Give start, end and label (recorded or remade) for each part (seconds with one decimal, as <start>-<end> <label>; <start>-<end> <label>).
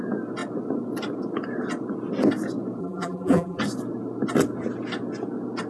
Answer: 0.0-2.8 recorded; 2.8-3.6 remade; 3.6-5.7 recorded